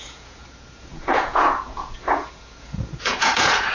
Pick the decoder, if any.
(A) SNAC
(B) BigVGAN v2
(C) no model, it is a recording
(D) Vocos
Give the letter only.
D